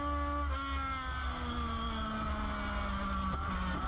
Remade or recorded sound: recorded